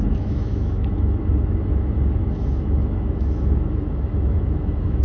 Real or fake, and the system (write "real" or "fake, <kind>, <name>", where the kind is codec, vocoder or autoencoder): fake, autoencoder, DAC-VAE